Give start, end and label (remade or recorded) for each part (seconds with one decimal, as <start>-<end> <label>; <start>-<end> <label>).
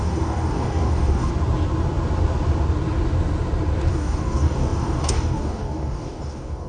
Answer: 0.0-1.3 remade; 1.3-3.9 recorded; 3.9-6.7 remade